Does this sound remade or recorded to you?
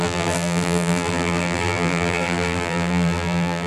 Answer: remade